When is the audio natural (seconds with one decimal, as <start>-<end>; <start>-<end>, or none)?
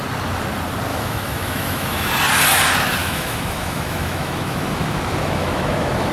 0.0-0.9; 2.1-3.0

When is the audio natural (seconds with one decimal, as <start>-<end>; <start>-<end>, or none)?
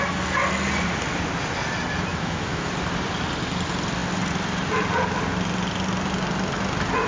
0.0-2.1; 2.7-7.1